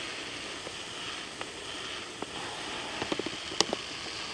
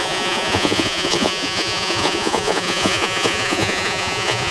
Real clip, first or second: first